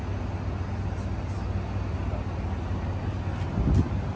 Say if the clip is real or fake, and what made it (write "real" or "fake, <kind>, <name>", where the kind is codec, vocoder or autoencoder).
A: real